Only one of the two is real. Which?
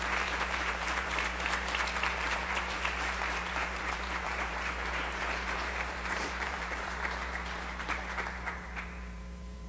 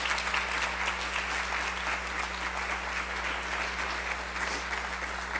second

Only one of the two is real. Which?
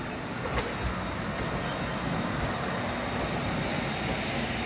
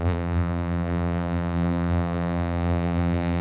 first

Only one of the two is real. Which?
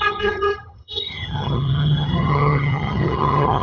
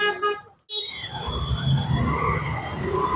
second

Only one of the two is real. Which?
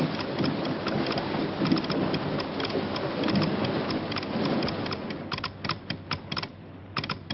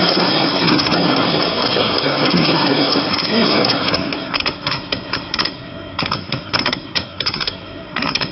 first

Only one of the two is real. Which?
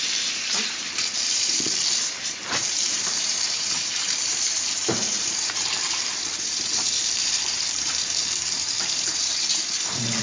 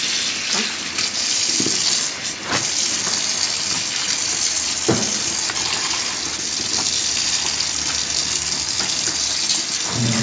second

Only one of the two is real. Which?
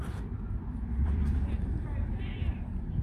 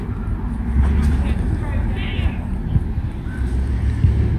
second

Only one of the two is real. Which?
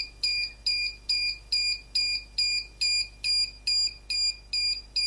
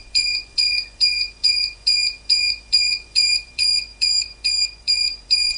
first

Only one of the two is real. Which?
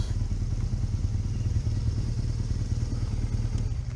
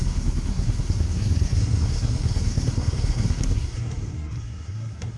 first